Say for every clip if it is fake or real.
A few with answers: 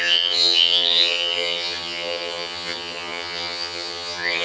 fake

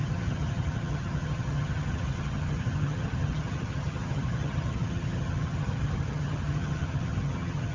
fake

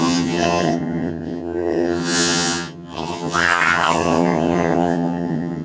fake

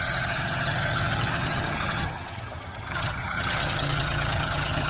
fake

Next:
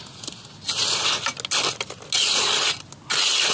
real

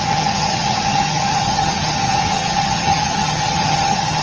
fake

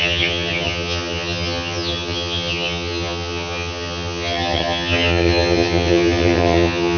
fake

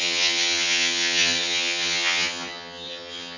fake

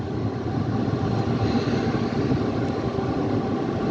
real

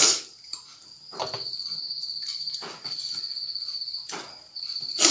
real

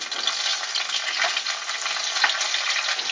real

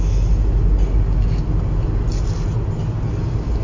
real